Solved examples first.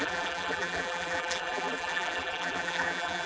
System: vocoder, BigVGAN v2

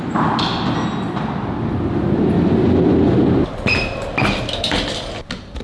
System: none